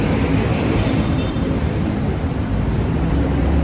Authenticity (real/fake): fake